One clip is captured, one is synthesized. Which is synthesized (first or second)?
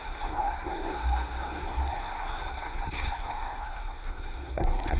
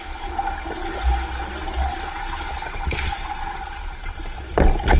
first